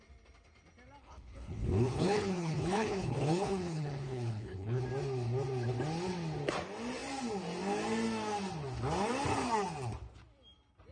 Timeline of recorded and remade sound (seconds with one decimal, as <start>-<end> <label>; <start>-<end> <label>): 0.0-1.0 recorded; 1.0-4.8 remade; 4.8-10.9 recorded

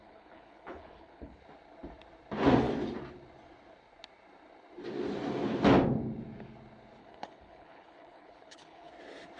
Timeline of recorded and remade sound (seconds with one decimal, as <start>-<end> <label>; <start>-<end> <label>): 0.0-1.4 remade; 1.4-7.0 recorded; 7.0-8.9 remade; 8.9-9.4 recorded

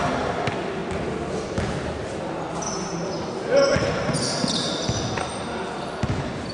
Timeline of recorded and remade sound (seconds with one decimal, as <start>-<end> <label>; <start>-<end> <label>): 0.0-6.5 recorded

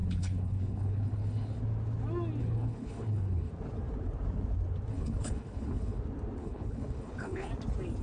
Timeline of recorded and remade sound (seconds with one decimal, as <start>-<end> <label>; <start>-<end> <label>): 0.0-1.6 remade; 1.6-2.4 recorded; 2.4-3.5 remade; 3.5-4.9 recorded; 4.9-6.0 remade; 6.0-6.4 recorded; 6.4-7.5 remade; 7.5-8.0 recorded

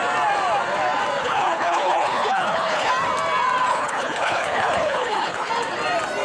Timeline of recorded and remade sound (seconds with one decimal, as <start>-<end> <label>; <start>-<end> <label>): 0.0-1.2 recorded; 1.2-2.9 remade; 2.9-3.7 recorded; 3.7-5.5 remade; 5.5-6.2 recorded

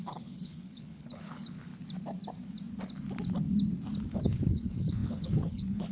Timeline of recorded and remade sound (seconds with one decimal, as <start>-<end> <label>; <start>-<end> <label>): 0.0-1.7 remade; 1.7-4.1 recorded; 4.1-5.9 remade

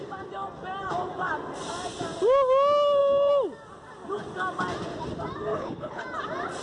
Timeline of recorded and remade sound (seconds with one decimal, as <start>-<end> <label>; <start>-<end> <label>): 0.0-5.5 recorded; 5.5-6.0 remade; 6.0-6.6 recorded